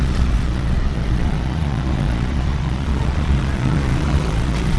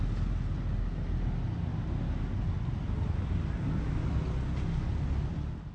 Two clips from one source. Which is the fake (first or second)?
first